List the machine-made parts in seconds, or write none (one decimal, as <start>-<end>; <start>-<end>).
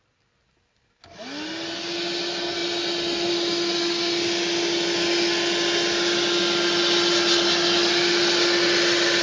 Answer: none